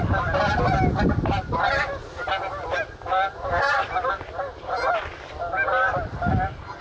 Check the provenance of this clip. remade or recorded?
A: recorded